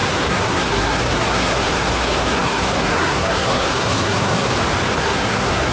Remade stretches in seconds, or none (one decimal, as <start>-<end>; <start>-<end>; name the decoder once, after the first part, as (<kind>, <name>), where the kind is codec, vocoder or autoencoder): 0.0-4.5 (codec, SNAC); 5.0-5.7